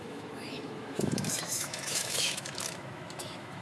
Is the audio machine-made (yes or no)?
yes